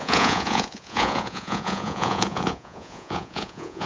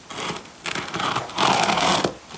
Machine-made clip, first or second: first